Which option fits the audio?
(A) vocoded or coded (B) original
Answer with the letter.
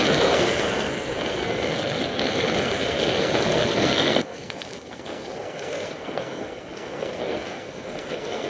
A